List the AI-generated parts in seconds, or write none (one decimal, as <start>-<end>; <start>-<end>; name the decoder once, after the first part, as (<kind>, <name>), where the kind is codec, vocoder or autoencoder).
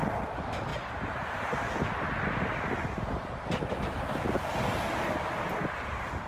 none